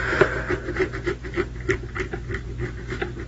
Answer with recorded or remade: recorded